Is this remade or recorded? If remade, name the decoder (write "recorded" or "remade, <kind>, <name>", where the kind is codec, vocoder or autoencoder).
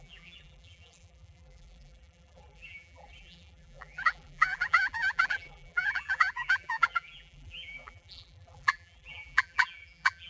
remade, vocoder, BigVGAN v2